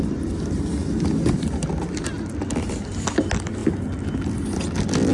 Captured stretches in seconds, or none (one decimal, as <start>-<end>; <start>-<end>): 0.0-5.1